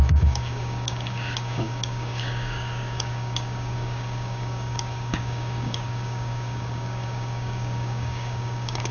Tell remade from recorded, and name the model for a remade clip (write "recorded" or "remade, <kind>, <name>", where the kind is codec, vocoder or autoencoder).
remade, codec, DAC